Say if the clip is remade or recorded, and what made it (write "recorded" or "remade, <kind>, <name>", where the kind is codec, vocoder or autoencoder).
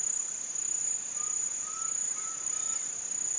recorded